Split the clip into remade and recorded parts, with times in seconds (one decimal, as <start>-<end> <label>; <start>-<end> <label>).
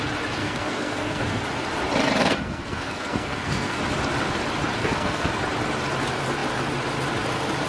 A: 0.0-0.4 recorded; 0.4-1.4 remade; 1.4-2.2 recorded; 2.2-3.8 remade; 3.8-4.8 recorded; 4.8-5.3 remade; 5.3-7.7 recorded